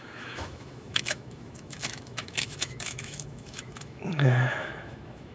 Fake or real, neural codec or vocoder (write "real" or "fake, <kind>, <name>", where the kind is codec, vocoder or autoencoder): fake, autoencoder, DAC-VAE